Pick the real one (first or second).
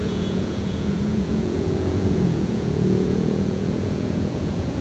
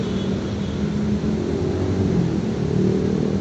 second